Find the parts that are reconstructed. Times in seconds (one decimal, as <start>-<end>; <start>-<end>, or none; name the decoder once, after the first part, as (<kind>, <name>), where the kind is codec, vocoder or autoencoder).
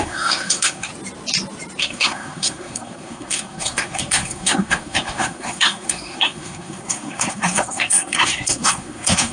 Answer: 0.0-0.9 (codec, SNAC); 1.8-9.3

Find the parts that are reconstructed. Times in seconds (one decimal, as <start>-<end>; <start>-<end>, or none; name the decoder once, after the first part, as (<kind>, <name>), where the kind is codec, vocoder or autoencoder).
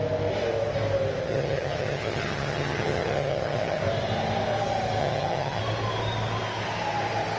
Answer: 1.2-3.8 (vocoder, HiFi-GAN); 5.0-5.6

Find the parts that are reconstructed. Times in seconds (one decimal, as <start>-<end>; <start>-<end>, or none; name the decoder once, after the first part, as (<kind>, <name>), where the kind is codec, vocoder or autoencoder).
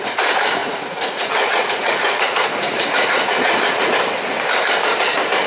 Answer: 0.6-3.9 (vocoder, Vocos)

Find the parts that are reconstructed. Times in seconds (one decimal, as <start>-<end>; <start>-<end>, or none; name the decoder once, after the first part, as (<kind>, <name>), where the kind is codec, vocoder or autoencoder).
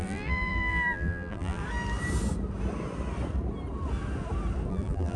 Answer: 0.0-1.6 (vocoder, BigVGAN v2); 4.7-5.2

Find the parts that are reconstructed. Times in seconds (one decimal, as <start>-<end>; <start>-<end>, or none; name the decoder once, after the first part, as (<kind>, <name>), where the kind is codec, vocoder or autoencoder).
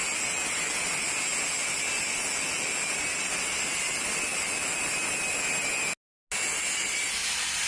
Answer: none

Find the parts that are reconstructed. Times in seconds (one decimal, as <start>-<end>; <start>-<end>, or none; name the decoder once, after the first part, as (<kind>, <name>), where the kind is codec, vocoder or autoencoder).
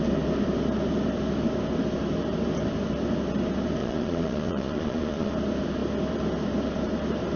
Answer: 3.8-5.3 (vocoder, Vocos)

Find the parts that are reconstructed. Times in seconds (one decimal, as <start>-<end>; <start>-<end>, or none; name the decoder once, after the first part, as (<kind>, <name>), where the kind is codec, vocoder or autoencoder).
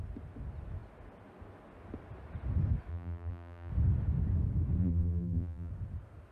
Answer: 2.9-3.7 (vocoder, BigVGAN v2); 4.8-5.7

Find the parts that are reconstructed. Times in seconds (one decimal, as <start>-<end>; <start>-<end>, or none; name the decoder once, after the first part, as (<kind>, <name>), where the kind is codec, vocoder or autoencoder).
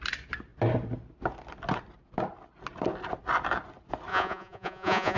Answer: 4.1-5.2 (vocoder, Vocos)